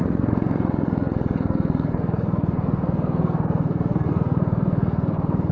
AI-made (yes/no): yes